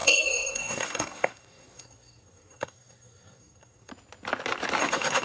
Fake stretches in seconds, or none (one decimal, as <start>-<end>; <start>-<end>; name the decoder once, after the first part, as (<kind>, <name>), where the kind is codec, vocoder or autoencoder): 0.0-3.9 (codec, SNAC); 4.8-5.2